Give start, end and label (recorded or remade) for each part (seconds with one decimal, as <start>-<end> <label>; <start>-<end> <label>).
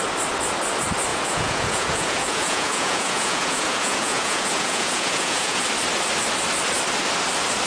0.0-1.1 recorded; 1.1-5.6 remade; 5.6-7.7 recorded